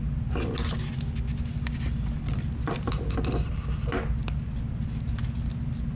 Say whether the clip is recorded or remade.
recorded